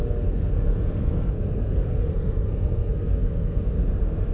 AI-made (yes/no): yes